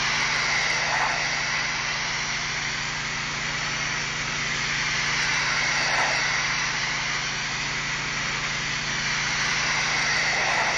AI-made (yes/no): no